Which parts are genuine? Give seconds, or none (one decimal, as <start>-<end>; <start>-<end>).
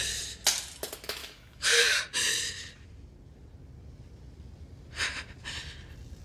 0.0-1.2; 2.0-6.2